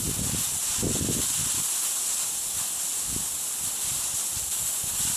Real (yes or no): yes